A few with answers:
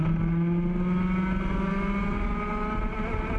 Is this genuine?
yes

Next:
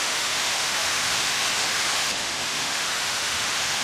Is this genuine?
no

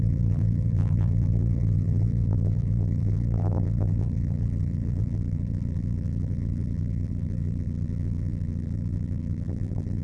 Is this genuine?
no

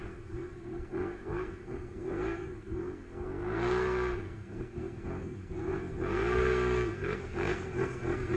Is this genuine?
no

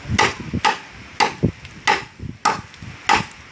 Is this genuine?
yes